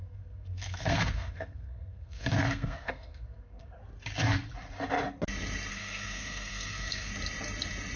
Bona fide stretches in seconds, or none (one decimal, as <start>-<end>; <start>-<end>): 3.8-5.7; 7.1-8.0